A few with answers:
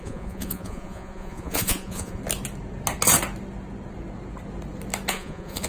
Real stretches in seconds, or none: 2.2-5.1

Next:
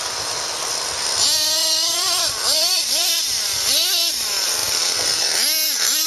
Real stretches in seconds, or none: 0.0-1.6; 3.1-6.1

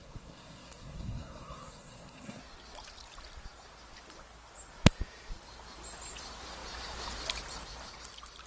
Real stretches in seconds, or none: 2.4-8.5

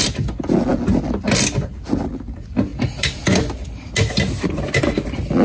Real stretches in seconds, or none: 0.0-5.4

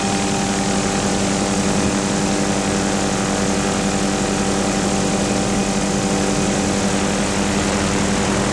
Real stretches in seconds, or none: 0.0-8.5

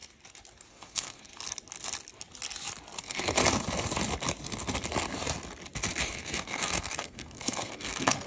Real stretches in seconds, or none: 0.0-0.7; 1.3-3.0; 3.4-6.0

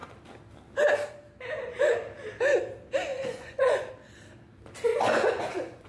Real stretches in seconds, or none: 0.0-3.1; 3.9-4.9

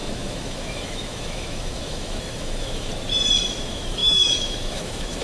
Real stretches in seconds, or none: 2.9-3.5